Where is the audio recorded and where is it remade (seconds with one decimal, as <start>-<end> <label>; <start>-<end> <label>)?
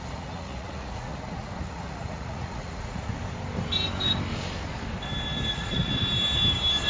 0.0-3.1 remade; 3.1-5.5 recorded; 5.5-5.9 remade; 5.9-6.9 recorded